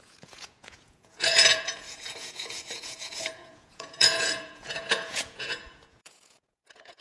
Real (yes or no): no